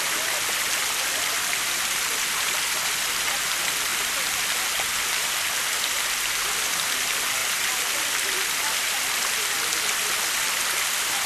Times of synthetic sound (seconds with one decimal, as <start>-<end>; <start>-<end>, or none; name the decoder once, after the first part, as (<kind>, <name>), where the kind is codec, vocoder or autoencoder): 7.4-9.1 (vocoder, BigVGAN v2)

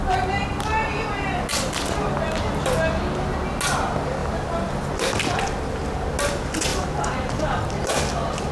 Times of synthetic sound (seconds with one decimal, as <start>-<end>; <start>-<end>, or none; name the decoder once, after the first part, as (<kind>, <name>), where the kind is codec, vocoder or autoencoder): 6.7-7.6 (vocoder, BigVGAN v2)

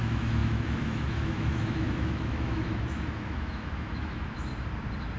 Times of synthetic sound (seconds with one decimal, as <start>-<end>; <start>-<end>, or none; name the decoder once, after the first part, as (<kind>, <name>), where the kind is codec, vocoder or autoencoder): 0.0-4.5 (autoencoder, DAC-VAE)

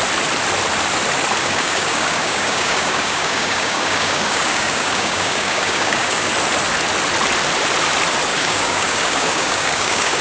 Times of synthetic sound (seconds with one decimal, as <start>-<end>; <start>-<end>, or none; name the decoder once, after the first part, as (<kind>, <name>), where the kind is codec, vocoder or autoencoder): 1.4-6.3 (codec, DAC); 8.3-10.2

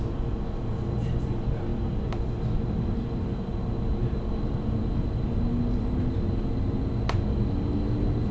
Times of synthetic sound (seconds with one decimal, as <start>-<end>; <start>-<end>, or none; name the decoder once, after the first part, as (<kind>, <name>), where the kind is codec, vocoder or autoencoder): none